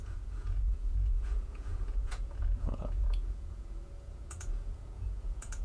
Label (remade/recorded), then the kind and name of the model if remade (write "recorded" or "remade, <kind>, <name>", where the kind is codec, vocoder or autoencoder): remade, vocoder, Vocos